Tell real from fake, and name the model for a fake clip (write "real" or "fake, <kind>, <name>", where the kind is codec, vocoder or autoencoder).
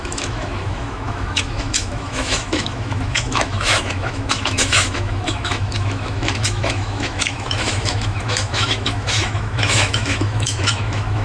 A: fake, autoencoder, DAC-VAE